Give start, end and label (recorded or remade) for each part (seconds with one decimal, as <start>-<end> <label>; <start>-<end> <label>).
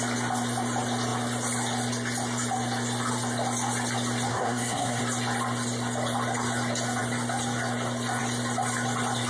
0.0-4.3 recorded; 4.3-5.0 remade; 5.0-9.3 recorded